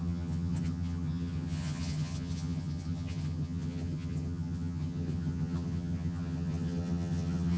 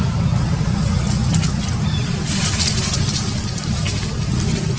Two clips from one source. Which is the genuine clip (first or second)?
second